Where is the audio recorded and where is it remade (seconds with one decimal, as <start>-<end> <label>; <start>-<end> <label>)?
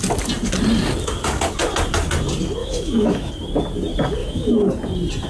0.0-2.6 recorded; 2.6-3.3 remade; 3.3-4.2 recorded; 4.2-4.7 remade; 4.7-5.3 recorded